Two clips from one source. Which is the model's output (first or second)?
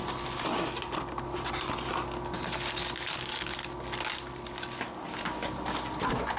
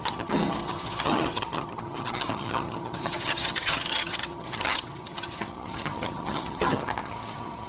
second